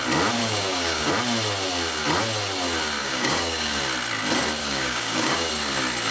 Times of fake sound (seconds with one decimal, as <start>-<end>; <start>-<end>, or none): 0.4-1.1; 3.0-3.8; 4.6-5.5